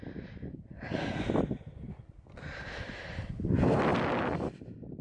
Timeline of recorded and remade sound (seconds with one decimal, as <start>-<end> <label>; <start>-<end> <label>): 0.0-5.0 recorded